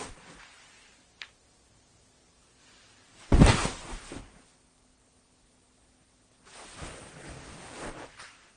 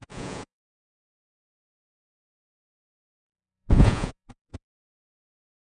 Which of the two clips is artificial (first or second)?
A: second